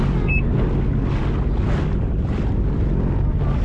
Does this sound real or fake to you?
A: real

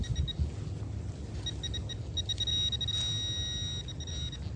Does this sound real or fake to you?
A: real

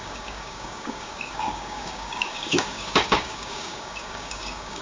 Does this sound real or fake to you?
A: fake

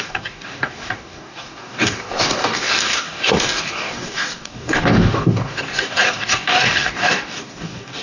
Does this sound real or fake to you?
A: fake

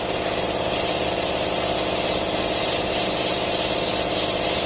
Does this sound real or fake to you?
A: real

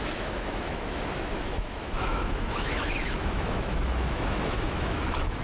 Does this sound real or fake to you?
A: fake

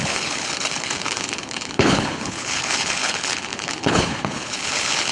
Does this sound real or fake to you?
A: fake